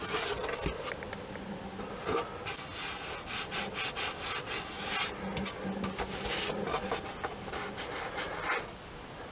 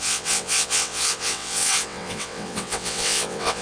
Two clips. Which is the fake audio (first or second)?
second